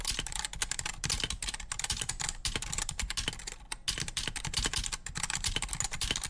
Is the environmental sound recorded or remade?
recorded